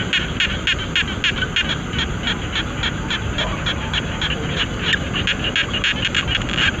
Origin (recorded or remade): recorded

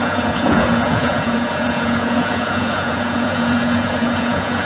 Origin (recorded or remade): remade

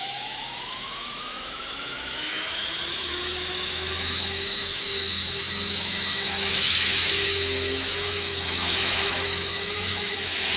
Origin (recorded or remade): remade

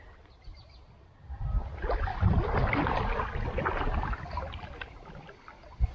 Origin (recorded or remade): recorded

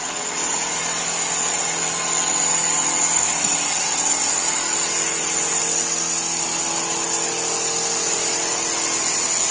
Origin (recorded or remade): recorded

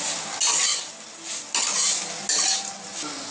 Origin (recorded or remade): recorded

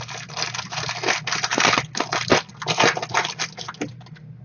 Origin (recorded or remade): recorded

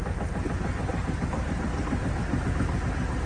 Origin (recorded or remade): recorded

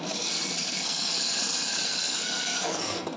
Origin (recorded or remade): remade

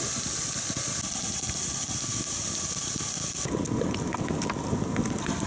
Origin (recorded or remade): recorded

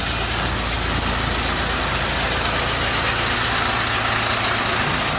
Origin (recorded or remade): recorded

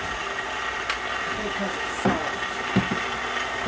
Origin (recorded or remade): recorded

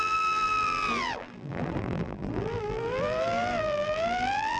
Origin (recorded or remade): remade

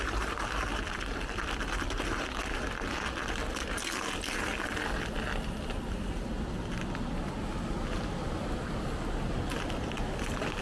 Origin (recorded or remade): recorded